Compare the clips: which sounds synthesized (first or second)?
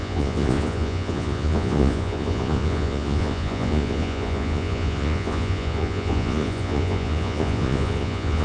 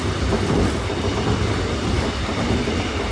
first